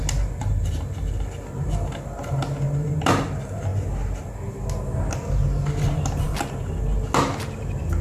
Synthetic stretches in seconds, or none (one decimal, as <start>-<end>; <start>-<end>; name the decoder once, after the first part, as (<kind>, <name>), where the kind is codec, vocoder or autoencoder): none